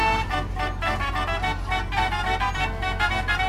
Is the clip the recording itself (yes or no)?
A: yes